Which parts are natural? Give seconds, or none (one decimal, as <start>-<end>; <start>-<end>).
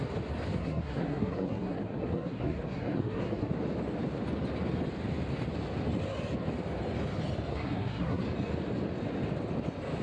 0.0-0.6; 3.4-7.5; 8.2-10.0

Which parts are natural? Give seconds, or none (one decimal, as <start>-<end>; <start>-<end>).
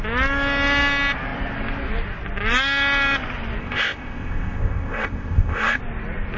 0.0-3.6; 5.8-6.4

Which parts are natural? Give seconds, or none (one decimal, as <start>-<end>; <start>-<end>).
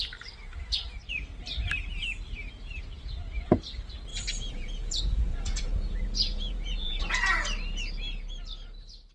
0.0-4.1; 7.0-9.1